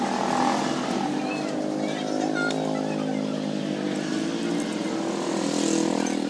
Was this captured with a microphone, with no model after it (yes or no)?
yes